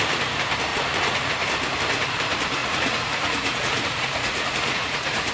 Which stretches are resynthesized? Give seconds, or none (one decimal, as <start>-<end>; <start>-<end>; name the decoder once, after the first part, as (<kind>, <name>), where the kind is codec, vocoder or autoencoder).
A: 0.7-1.3 (vocoder, Vocos); 2.6-5.3